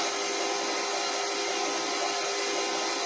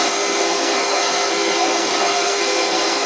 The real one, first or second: first